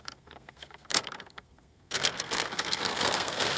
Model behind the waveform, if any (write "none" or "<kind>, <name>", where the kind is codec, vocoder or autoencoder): codec, SNAC